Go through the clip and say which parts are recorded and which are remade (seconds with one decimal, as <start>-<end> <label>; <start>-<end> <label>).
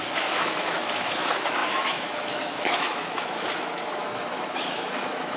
0.0-5.4 remade